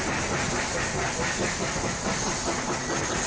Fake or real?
real